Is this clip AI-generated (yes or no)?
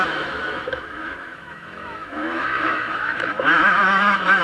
yes